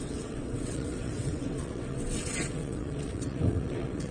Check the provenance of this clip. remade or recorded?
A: remade